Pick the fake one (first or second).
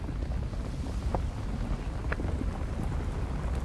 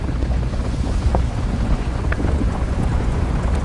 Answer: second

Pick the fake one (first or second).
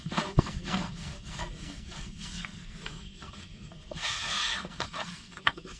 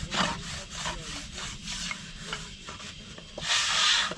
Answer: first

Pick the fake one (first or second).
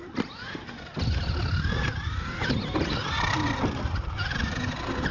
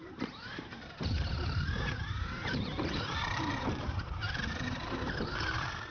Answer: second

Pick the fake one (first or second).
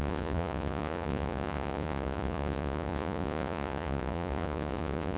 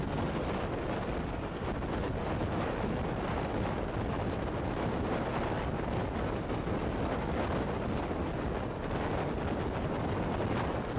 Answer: first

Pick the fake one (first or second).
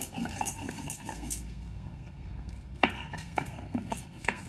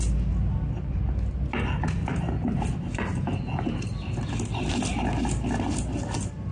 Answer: first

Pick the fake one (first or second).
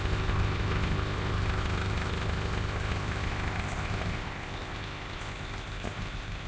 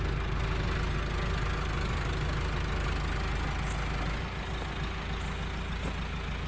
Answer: first